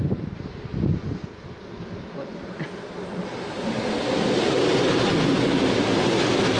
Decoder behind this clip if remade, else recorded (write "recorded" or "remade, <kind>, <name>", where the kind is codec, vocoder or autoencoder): recorded